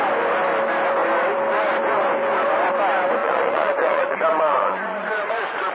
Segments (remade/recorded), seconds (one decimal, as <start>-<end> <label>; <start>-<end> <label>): 0.0-3.2 recorded; 3.2-5.7 remade